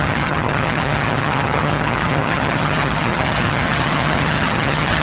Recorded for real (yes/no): no